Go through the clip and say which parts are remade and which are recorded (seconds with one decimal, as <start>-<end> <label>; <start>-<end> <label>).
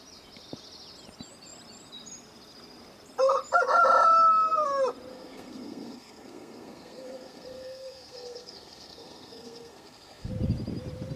0.0-5.1 recorded; 5.1-10.3 remade; 10.3-11.2 recorded